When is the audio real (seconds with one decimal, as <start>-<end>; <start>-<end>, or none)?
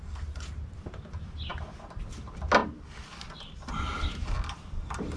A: 0.0-5.2